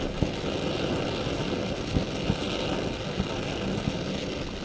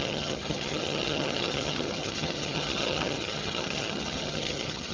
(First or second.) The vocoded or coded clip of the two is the second